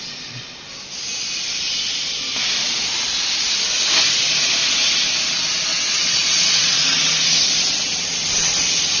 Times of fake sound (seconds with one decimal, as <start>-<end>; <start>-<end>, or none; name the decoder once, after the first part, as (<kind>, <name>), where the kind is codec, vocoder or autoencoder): 5.7-6.8 (vocoder, Vocos)